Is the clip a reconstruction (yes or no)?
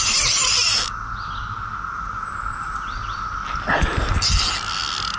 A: no